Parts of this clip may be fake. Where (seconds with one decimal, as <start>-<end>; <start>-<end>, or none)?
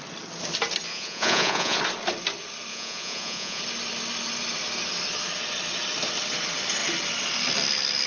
0.9-1.8; 2.7-3.6